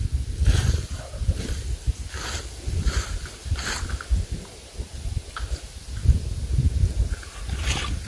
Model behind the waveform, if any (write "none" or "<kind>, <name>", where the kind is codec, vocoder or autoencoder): none